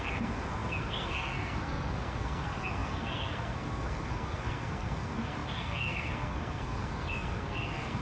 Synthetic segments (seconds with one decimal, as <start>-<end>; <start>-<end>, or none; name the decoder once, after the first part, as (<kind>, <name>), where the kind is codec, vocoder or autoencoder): 0.0-8.0 (codec, SNAC)